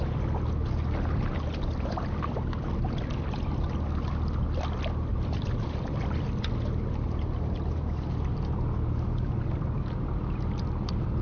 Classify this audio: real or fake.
real